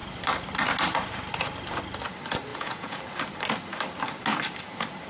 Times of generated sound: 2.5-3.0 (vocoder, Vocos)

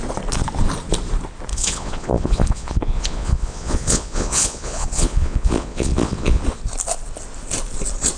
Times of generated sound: 1.5-6.4 (vocoder, Vocos)

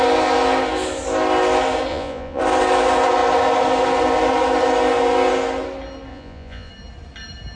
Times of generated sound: 1.9-2.4 (vocoder, Vocos); 6.1-6.7

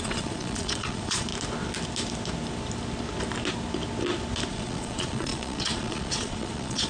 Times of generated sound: 0.0-1.3 (vocoder, Vocos); 4.5-6.9

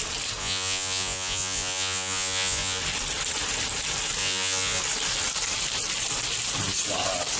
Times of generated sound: 0.4-2.8 (vocoder, Vocos); 4.2-4.8

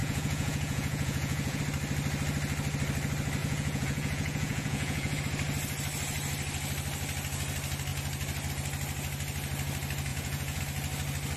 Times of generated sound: 0.0-1.6 (vocoder, Vocos); 3.4-5.2; 10.1-10.6

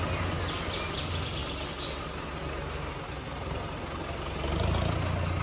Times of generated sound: none

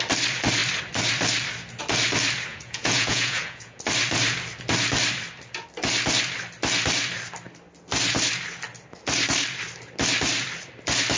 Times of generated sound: 2.5-3.8 (vocoder, Vocos)